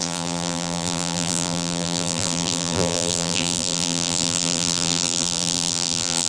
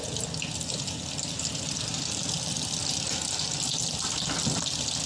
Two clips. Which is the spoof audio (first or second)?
first